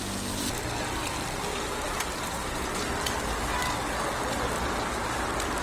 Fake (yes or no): no